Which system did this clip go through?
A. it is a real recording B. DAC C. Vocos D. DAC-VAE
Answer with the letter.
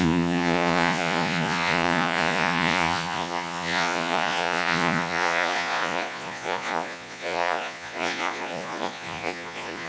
C